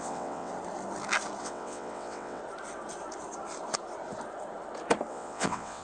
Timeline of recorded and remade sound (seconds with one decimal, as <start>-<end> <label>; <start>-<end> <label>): 0.0-0.5 remade; 0.5-1.4 recorded; 1.4-2.4 remade; 2.4-5.1 recorded; 5.1-5.8 remade